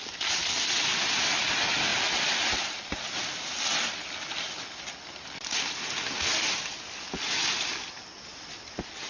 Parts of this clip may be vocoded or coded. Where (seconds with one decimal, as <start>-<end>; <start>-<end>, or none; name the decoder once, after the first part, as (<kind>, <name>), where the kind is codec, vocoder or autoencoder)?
1.9-3.9 (vocoder, BigVGAN v2)